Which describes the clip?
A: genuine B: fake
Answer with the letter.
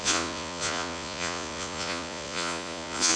B